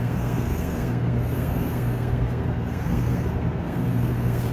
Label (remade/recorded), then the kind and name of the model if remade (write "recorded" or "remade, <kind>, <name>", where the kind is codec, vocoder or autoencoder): remade, codec, SNAC